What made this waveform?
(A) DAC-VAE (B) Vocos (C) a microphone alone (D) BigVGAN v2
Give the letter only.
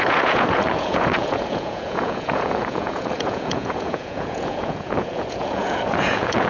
B